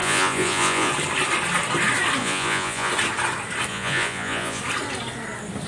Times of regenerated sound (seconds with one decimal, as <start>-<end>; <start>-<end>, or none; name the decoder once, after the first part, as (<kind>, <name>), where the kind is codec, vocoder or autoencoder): 0.0-0.9 (vocoder, Vocos); 2.2-2.9; 3.7-4.6

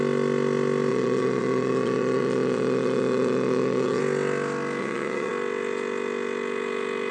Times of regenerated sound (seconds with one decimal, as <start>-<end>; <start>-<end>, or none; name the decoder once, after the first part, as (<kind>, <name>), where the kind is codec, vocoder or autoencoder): 0.9-4.0 (vocoder, Vocos); 4.8-5.3

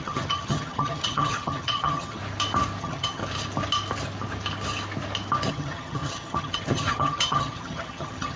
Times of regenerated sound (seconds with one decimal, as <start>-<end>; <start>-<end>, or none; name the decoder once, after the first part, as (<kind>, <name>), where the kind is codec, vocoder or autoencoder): 0.0-2.2 (vocoder, HiFi-GAN); 2.8-3.2; 5.5-8.4

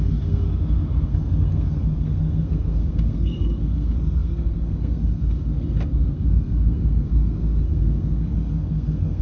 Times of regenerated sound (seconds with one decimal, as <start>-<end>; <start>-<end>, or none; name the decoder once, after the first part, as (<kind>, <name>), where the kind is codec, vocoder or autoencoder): 0.0-9.2 (codec, SNAC)

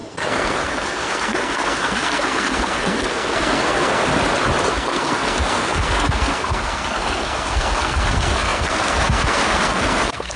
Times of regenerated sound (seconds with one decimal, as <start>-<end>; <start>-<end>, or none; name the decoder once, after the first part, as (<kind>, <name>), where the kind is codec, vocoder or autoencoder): 0.0-4.1 (codec, SNAC); 4.7-10.4

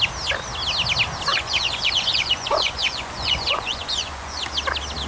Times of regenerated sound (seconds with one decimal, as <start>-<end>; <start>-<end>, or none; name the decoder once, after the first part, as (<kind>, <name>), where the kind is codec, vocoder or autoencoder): 1.3-4.4 (vocoder, Vocos)

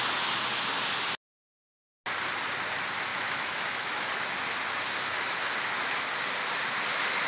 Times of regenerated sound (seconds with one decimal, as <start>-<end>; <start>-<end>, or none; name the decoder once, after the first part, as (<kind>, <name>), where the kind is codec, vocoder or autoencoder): 3.1-4.1 (autoencoder, DAC-VAE)